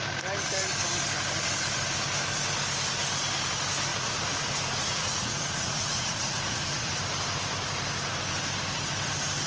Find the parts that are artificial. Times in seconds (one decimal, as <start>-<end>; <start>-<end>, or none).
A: 3.9-7.0